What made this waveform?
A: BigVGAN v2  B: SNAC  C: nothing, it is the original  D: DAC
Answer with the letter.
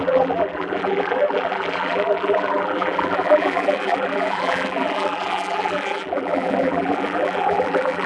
A